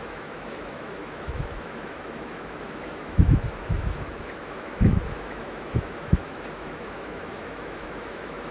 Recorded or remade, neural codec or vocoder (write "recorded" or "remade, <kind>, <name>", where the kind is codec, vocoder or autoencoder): remade, autoencoder, DAC-VAE